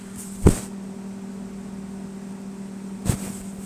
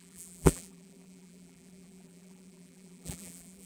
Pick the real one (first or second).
first